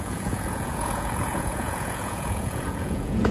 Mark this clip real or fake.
fake